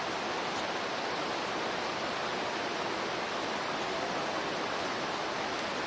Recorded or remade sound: recorded